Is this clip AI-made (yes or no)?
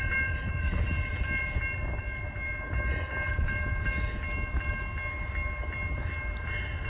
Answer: no